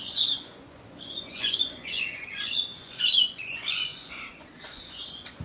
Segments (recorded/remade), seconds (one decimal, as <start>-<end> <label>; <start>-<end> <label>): 0.0-5.4 remade